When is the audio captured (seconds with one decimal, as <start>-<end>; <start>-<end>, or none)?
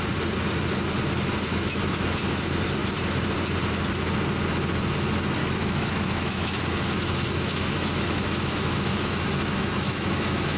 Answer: 0.0-1.5; 2.2-5.4